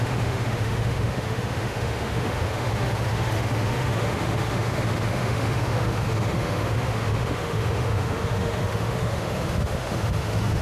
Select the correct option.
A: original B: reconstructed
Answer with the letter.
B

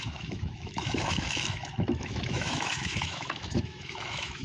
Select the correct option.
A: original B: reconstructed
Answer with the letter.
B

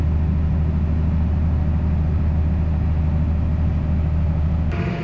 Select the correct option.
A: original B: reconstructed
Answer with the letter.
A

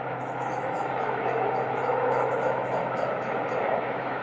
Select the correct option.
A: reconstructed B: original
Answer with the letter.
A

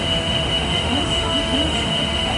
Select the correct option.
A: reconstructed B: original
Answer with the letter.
A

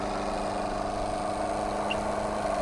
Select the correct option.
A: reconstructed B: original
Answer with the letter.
B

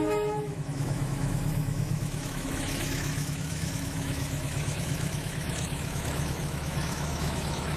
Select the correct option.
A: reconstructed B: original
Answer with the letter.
A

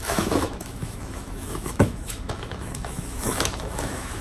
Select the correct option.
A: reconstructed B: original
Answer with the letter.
A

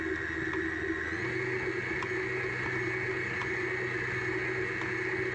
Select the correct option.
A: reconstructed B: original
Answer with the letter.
B